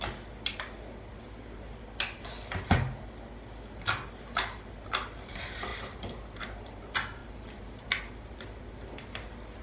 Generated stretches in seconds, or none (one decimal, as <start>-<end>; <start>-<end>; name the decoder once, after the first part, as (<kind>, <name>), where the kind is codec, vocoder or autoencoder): none